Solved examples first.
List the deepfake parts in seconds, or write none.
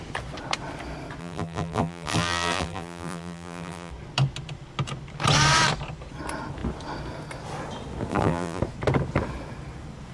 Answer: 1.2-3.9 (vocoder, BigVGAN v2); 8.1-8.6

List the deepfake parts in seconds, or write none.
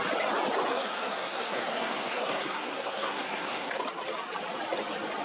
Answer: 0.7-3.8 (codec, SNAC)